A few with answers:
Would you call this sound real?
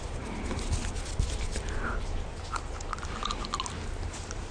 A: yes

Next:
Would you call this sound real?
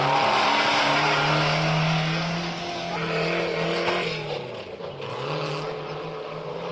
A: yes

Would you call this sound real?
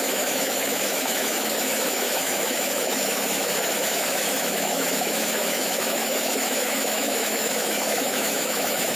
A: no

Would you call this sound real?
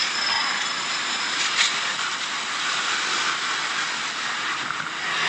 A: yes